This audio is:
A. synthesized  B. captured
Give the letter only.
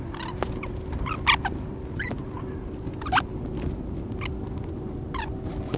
B